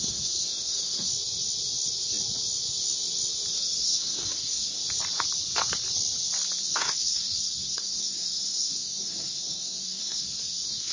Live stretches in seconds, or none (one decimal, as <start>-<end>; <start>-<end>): 1.1-3.5; 4.8-6.6